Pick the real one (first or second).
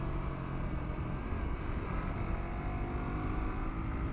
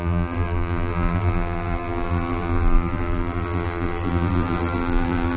first